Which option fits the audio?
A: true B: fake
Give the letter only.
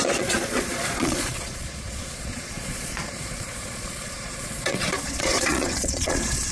B